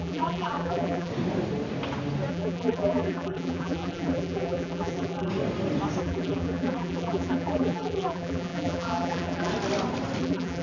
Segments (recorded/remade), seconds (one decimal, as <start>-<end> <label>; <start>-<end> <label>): 0.0-1.1 remade; 1.1-2.3 recorded; 2.3-5.3 remade; 5.3-6.0 recorded; 6.0-9.5 remade; 9.5-10.2 recorded; 10.2-10.6 remade